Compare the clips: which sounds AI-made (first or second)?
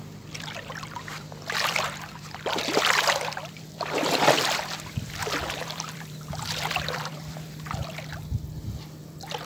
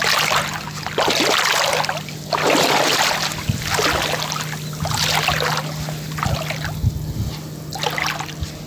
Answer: first